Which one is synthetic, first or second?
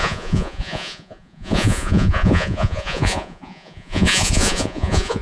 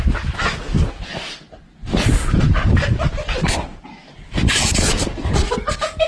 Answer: first